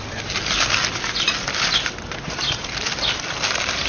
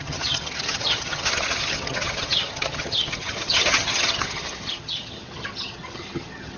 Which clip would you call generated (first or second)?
second